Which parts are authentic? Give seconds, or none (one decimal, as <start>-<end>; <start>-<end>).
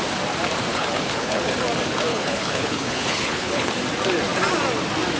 0.0-0.7; 1.5-2.1; 3.7-5.2